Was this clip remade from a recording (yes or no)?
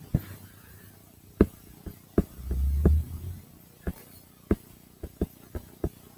no